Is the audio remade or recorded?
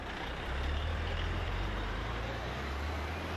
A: remade